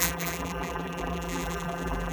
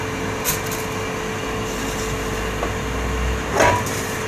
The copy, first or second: first